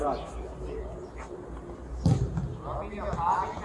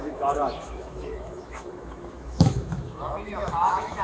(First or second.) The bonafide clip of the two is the first